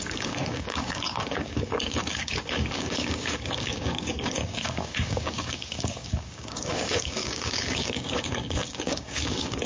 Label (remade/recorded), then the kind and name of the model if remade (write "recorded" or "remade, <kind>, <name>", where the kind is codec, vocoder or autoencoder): remade, codec, DAC